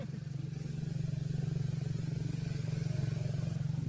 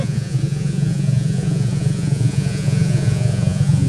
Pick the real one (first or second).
first